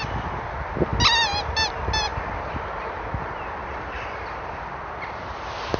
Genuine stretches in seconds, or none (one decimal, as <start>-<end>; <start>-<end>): 0.0-2.1; 3.0-3.6; 5.2-5.8